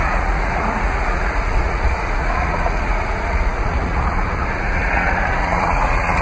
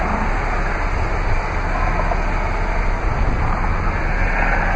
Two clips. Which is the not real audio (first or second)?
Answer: first